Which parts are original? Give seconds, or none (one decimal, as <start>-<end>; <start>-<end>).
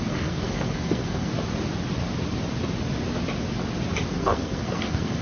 1.3-4.1